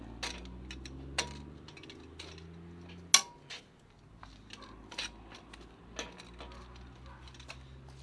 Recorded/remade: recorded